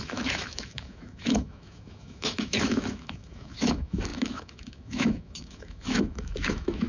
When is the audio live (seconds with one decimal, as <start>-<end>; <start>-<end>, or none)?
none